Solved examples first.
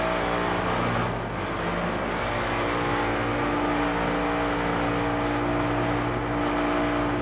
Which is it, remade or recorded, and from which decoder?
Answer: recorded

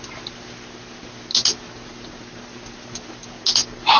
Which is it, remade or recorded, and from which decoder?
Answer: recorded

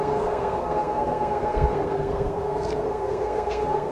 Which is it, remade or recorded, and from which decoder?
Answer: remade, codec, SNAC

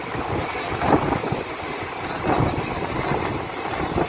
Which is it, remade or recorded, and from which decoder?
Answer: recorded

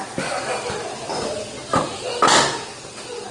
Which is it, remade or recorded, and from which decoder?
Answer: remade, vocoder, BigVGAN v2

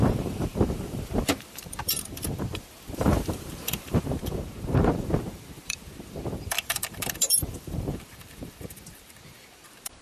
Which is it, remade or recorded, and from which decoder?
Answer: remade, vocoder, BigVGAN v2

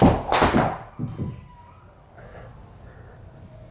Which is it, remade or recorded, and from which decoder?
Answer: recorded